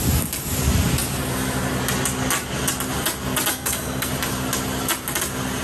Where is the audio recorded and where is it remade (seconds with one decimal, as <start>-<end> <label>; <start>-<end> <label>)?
0.0-3.5 recorded; 3.5-4.1 remade; 4.1-5.6 recorded